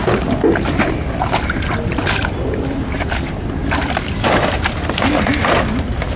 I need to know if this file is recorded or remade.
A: recorded